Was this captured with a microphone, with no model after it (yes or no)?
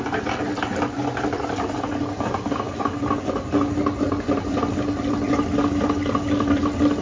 yes